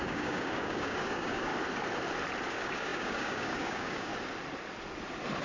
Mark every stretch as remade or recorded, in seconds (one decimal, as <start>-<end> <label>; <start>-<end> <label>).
0.0-1.5 remade; 1.5-2.5 recorded; 2.5-4.1 remade; 4.1-5.4 recorded

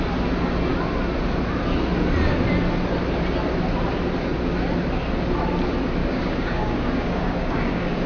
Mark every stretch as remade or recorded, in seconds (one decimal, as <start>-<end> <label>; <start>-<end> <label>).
0.0-6.0 recorded; 6.0-8.1 remade

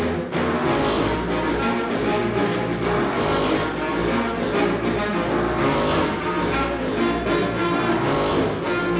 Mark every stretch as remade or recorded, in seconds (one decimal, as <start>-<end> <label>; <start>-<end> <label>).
0.0-9.0 recorded

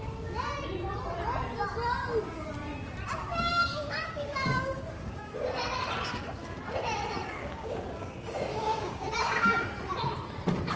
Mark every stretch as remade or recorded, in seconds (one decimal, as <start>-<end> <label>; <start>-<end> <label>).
0.0-3.3 recorded; 3.3-5.3 remade; 5.3-7.3 recorded; 7.3-8.1 remade; 8.1-8.5 recorded; 8.5-9.6 remade; 9.6-10.8 recorded

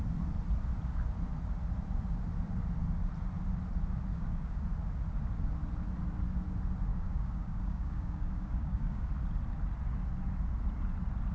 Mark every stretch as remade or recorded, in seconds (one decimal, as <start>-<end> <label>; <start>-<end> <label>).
0.0-4.1 recorded; 4.1-4.6 remade; 4.6-6.9 recorded; 6.9-9.1 remade; 9.1-11.3 recorded